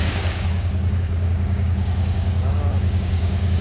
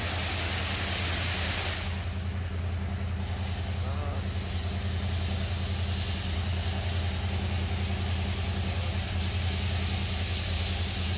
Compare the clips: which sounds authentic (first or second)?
second